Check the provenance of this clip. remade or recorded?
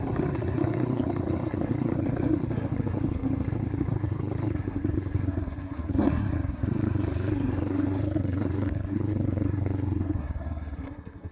remade